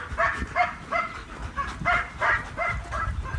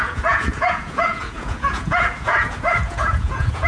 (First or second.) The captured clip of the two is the first